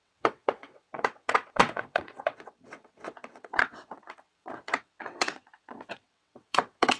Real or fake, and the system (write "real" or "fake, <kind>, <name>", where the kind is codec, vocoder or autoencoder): fake, vocoder, WaveNeXt